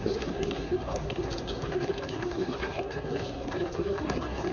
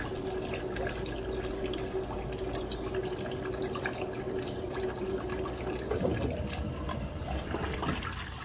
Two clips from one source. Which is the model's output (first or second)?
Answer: first